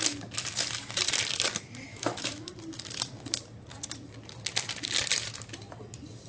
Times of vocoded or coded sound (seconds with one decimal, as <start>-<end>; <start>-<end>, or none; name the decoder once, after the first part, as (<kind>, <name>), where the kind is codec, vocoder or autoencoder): 1.9-2.5 (autoencoder, DAC-VAE)